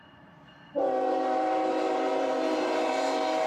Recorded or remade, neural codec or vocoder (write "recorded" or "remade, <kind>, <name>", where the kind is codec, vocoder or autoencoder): remade, vocoder, BigVGAN v2